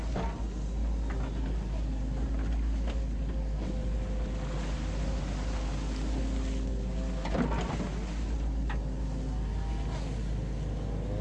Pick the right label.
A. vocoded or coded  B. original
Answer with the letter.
B